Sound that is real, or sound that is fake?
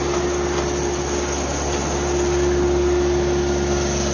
real